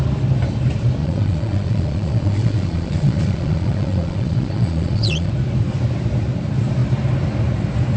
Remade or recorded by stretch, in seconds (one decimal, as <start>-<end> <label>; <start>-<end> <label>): 0.0-1.0 recorded; 1.0-5.3 remade; 5.3-8.0 recorded